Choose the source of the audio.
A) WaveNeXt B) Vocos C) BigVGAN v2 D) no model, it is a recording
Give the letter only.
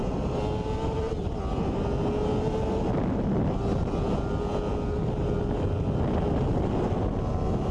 D